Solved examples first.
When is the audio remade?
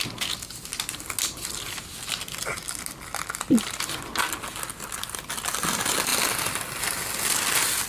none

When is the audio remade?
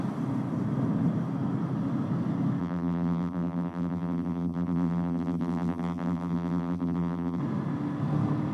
2.6-7.4 (vocoder, BigVGAN v2)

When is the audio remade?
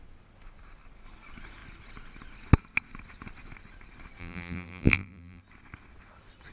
4.2-5.4 (vocoder, BigVGAN v2)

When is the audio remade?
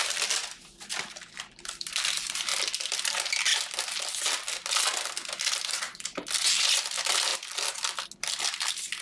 0.0-3.5 (vocoder, BigVGAN v2); 6.6-7.3; 8.2-9.0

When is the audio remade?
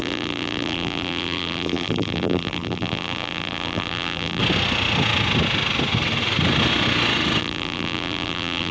0.0-4.4 (vocoder, BigVGAN v2); 7.4-8.7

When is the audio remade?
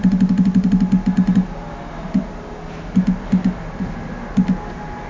none